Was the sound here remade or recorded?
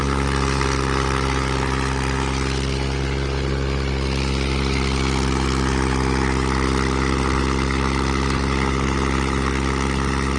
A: recorded